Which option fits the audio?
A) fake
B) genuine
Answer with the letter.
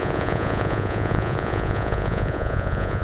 A